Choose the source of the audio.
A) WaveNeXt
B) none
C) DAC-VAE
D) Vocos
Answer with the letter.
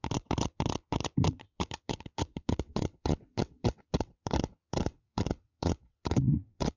A